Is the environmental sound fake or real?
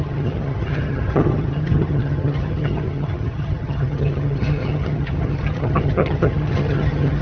fake